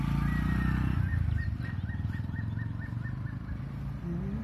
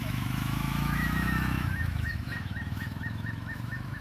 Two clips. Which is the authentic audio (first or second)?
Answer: first